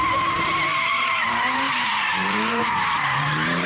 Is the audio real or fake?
fake